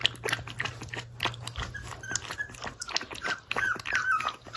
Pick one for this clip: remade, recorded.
recorded